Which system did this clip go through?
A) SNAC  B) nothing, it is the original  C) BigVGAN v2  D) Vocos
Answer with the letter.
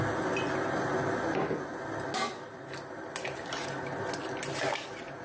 B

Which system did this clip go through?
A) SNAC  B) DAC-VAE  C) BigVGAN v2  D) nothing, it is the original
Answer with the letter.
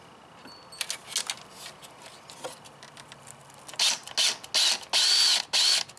D